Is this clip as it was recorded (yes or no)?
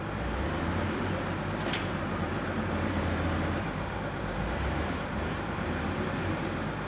no